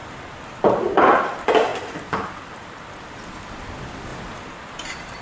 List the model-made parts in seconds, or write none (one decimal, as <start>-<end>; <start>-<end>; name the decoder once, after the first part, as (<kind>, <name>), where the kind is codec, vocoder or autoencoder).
0.0-5.2 (vocoder, BigVGAN v2)